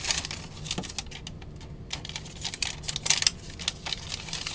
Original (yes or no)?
yes